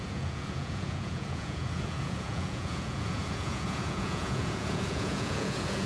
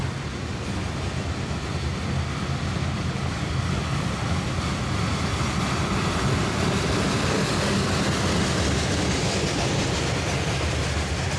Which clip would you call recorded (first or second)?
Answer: second